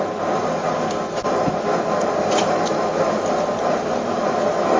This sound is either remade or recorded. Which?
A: recorded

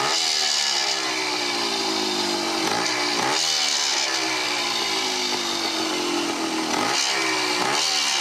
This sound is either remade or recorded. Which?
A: recorded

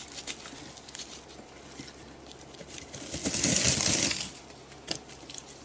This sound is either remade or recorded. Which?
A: recorded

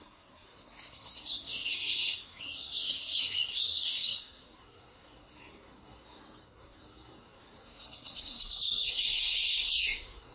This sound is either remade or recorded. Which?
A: remade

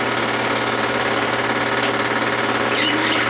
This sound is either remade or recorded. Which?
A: recorded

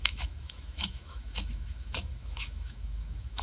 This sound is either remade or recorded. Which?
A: remade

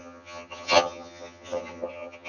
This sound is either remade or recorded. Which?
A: remade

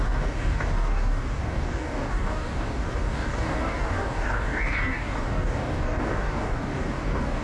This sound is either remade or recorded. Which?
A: remade